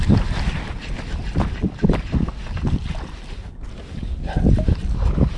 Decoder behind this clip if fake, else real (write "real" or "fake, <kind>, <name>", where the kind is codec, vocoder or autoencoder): real